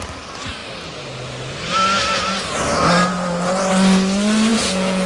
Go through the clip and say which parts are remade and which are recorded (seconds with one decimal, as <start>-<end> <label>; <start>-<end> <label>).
0.0-4.5 recorded; 4.5-5.1 remade